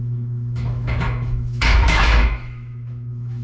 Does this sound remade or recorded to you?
remade